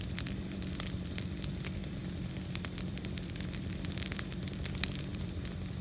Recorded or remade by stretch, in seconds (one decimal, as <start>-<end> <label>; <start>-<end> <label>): 0.0-5.8 recorded